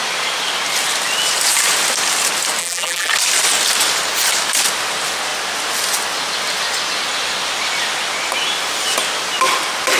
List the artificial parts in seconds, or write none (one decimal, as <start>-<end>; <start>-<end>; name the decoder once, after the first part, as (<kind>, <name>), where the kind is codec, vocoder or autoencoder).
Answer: 2.6-3.1 (vocoder, BigVGAN v2)